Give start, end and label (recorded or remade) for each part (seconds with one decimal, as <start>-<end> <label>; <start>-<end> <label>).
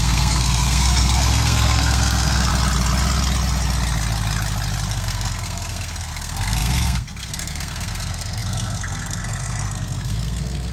0.0-2.5 remade; 2.5-4.9 recorded; 4.9-10.7 remade